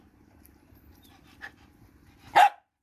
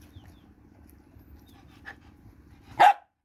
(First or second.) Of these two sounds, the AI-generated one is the first